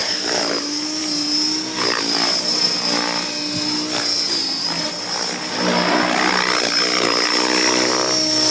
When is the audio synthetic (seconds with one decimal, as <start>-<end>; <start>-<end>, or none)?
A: 0.0-1.0